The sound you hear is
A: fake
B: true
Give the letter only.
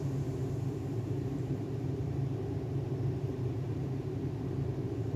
A